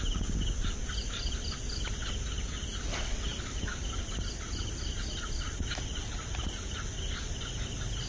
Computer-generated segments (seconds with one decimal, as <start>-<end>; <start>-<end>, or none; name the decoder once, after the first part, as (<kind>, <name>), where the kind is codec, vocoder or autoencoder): none